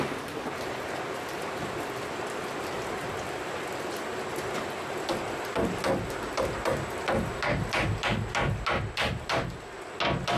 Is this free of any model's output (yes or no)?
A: yes